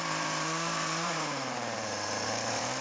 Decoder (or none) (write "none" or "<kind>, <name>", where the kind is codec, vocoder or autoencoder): vocoder, BigVGAN v2